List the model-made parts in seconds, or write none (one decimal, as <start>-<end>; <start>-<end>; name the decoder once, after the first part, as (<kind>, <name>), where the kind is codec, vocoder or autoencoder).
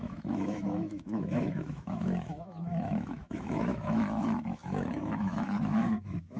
0.0-6.4 (autoencoder, DAC-VAE)